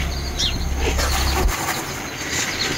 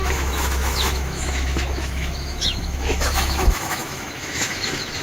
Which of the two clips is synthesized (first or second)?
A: second